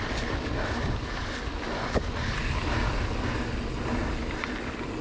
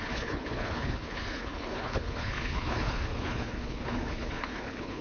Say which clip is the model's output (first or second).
second